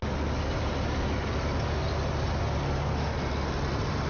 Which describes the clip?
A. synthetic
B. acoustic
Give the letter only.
B